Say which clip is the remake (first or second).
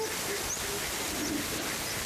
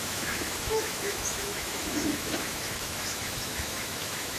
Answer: second